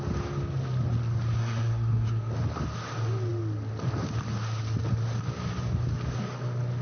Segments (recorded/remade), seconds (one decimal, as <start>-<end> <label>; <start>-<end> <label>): 0.0-1.4 recorded; 1.4-2.3 remade; 2.3-6.8 recorded